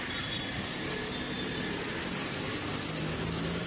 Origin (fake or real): real